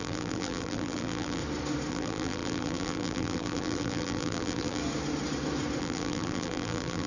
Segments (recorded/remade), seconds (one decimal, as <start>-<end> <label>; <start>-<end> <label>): 0.0-1.4 remade; 1.4-1.9 recorded; 1.9-4.8 remade; 4.8-5.8 recorded; 5.8-7.1 remade